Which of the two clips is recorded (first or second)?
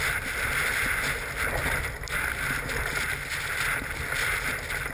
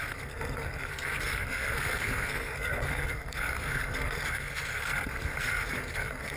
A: first